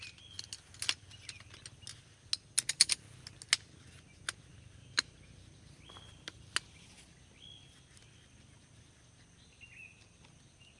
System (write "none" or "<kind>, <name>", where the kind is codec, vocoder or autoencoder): none